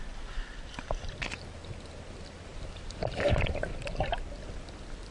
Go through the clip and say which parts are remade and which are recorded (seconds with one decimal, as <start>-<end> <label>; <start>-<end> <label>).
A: 0.0-2.5 recorded; 2.5-3.3 remade; 3.3-3.7 recorded; 3.7-4.4 remade; 4.4-5.1 recorded